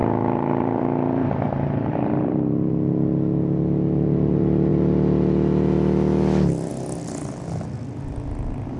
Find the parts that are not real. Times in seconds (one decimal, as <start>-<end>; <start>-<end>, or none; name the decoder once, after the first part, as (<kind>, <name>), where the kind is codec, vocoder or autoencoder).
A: 0.0-2.7 (vocoder, BigVGAN v2)